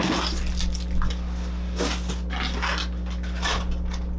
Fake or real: real